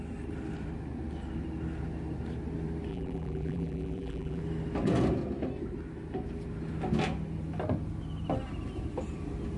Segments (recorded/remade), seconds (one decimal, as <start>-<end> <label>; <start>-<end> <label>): 0.0-2.9 recorded; 2.9-4.4 remade; 4.4-9.6 recorded